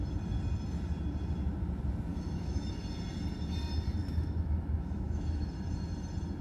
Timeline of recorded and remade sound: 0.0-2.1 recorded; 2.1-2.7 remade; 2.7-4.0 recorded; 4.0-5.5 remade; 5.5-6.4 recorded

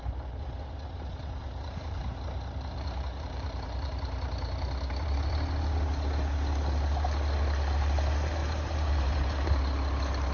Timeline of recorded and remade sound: 0.0-1.4 recorded; 1.4-5.3 remade; 5.3-8.4 recorded; 8.4-9.6 remade; 9.6-10.3 recorded

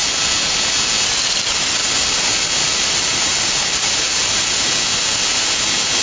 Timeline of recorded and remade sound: 0.0-1.8 recorded; 1.8-2.3 remade; 2.3-2.7 recorded; 2.7-4.7 remade; 4.7-6.0 recorded

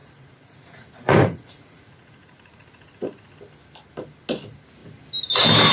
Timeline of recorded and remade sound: 0.0-3.4 remade; 3.4-5.7 recorded

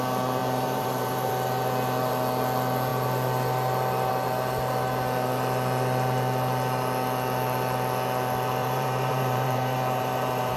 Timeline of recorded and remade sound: 0.0-0.4 recorded; 0.4-1.3 remade; 1.3-8.6 recorded; 8.6-10.6 remade

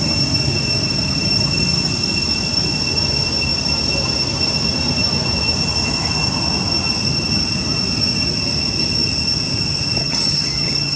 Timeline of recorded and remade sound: 0.0-10.0 recorded; 10.0-11.0 remade

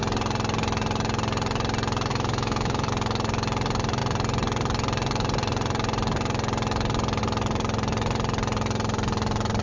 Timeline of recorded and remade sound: 0.0-2.1 recorded; 2.1-2.9 remade; 2.9-9.6 recorded

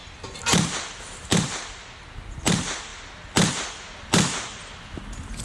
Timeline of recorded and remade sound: 0.0-5.4 recorded